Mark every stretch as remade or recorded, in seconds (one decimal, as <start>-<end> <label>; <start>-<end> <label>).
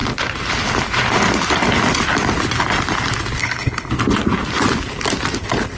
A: 0.0-3.4 recorded; 3.4-3.9 remade; 3.9-5.8 recorded